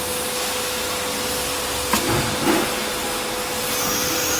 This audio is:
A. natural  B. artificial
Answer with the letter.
A